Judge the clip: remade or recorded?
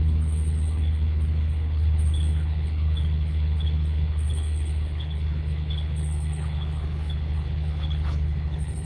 remade